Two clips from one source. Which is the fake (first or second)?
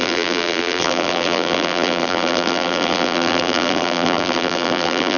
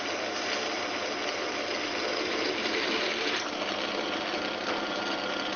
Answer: first